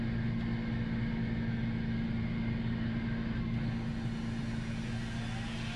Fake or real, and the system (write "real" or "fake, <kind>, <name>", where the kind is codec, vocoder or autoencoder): real